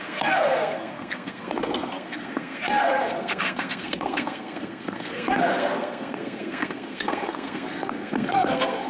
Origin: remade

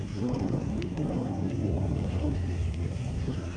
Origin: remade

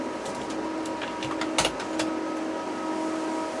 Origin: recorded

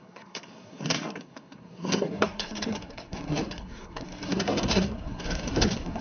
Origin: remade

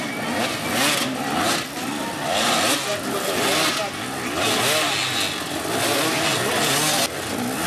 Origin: recorded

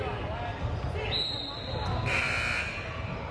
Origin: recorded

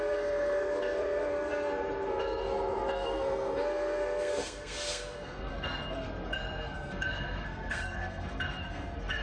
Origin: remade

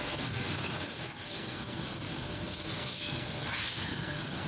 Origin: remade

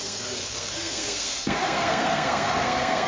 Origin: remade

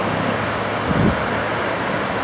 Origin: recorded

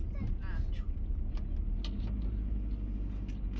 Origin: recorded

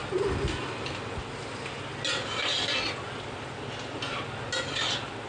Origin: recorded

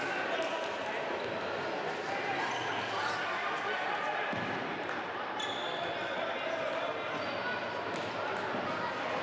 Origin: recorded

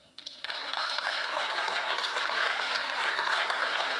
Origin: remade